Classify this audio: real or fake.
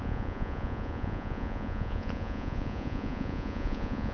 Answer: fake